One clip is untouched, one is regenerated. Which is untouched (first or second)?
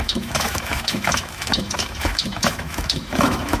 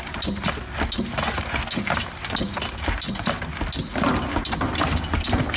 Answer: second